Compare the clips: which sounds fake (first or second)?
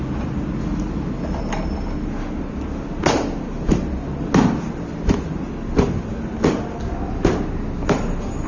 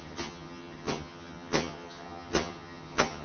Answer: second